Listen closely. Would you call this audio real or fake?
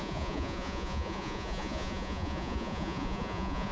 fake